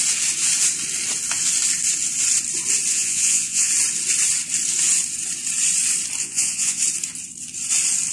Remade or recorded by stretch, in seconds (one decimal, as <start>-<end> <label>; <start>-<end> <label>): 0.0-2.9 recorded; 2.9-3.7 remade; 3.7-6.2 recorded; 6.2-6.8 remade; 6.8-8.1 recorded